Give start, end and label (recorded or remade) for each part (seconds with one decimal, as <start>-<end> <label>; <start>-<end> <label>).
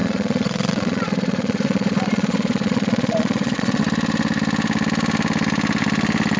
0.0-3.8 remade; 3.8-6.4 recorded